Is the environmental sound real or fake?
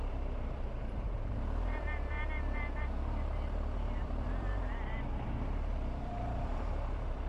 fake